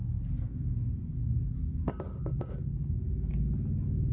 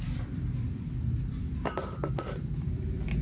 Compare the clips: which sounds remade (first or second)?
second